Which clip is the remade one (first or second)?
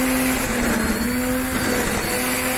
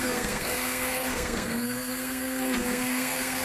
second